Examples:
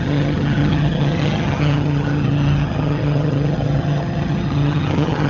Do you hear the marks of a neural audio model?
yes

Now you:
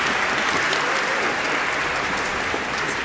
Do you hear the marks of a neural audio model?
no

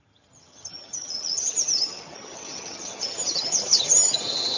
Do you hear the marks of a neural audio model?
yes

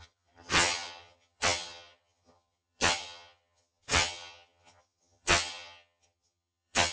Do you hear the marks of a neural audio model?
yes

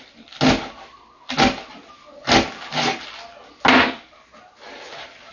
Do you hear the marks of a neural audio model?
no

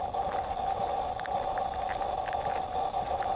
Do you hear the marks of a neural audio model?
no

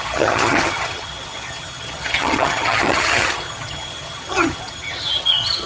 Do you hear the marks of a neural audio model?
yes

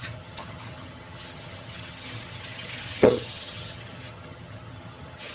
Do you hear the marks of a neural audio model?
yes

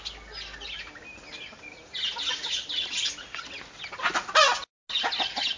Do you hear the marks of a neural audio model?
no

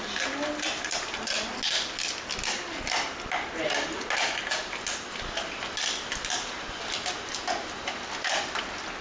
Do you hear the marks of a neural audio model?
no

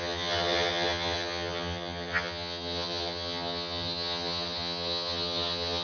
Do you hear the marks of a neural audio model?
yes